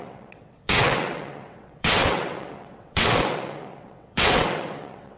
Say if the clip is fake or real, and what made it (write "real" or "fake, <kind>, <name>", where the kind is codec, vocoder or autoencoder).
fake, vocoder, WaveNeXt